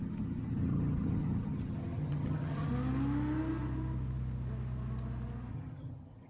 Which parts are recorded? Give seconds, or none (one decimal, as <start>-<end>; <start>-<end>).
2.7-5.5